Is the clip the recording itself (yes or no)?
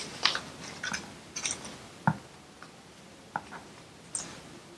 yes